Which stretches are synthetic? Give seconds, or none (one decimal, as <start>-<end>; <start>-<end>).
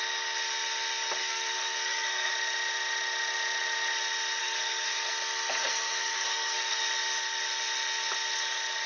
1.2-2.3; 4.4-5.1; 5.6-6.8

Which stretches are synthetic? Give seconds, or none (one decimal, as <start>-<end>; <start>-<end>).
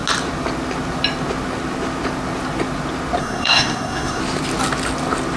3.2-4.2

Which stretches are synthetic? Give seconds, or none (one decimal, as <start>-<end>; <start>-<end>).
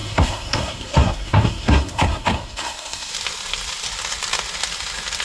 0.0-3.1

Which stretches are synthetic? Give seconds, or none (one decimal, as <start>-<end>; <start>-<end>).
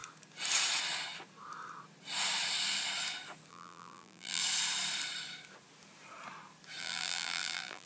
3.5-4.4; 6.8-7.9